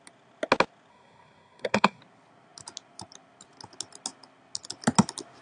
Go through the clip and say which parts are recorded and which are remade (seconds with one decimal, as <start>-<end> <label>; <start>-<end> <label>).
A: 0.0-0.9 recorded; 0.9-2.0 remade; 2.0-5.4 recorded